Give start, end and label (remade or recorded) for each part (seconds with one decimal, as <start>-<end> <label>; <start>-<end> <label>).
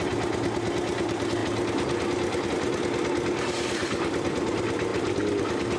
0.0-5.8 recorded